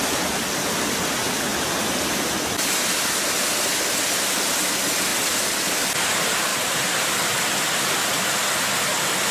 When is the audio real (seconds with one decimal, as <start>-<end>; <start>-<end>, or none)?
0.0-5.1; 5.9-6.5; 7.5-9.3